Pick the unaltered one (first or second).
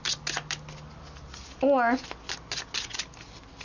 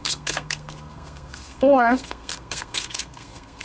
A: first